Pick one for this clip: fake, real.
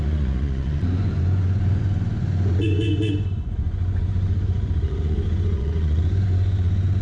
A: fake